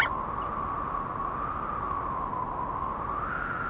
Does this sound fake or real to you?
real